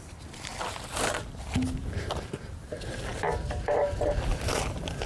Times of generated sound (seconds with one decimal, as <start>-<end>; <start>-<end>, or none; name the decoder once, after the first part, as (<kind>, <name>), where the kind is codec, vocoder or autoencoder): none